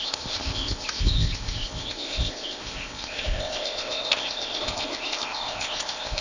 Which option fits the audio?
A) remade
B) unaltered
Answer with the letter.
A